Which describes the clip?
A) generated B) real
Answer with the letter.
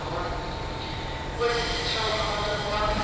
A